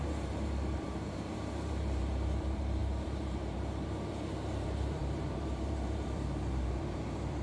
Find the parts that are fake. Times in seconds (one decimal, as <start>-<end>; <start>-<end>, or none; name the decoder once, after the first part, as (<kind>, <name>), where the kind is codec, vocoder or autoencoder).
0.0-7.4 (vocoder, BigVGAN v2)